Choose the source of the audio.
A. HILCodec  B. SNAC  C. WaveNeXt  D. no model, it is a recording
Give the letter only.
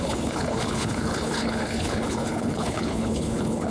A